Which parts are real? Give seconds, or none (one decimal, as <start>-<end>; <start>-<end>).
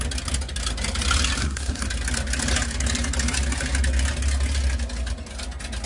0.0-1.4; 1.9-5.9